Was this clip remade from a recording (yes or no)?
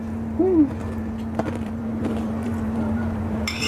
yes